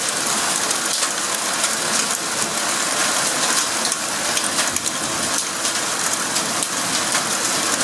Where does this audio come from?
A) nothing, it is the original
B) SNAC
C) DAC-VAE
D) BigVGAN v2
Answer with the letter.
A